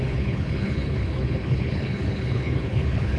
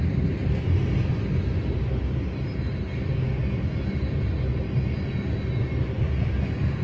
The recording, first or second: second